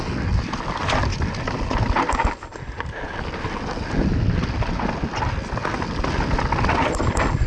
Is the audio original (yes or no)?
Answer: yes